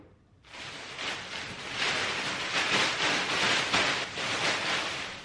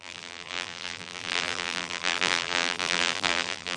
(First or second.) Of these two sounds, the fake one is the second